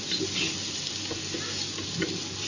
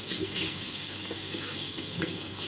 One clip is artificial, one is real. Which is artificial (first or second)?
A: second